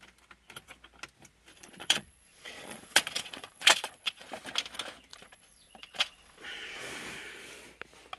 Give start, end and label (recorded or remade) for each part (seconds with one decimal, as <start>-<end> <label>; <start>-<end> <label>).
0.0-1.5 recorded; 1.5-4.3 remade; 4.3-5.1 recorded; 5.1-6.9 remade; 6.9-8.2 recorded